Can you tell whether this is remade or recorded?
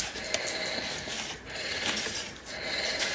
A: recorded